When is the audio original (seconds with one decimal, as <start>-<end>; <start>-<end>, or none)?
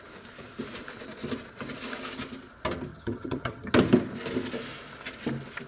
0.0-2.9; 3.7-5.7